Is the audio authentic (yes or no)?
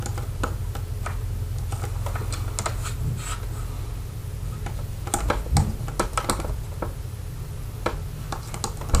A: yes